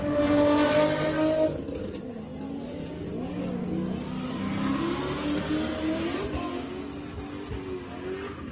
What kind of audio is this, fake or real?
real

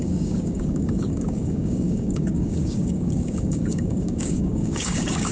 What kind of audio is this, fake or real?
fake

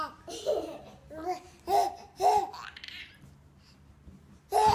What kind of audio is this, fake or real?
real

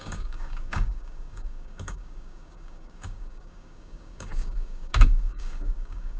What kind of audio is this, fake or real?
fake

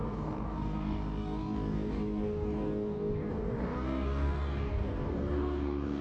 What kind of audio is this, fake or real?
fake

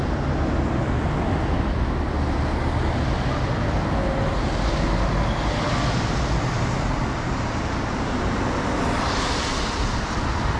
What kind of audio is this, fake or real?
real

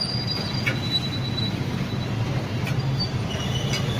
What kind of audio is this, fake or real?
real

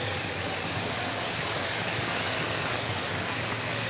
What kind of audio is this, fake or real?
fake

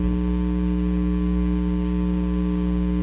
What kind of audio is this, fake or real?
fake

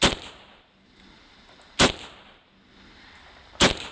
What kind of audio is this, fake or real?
real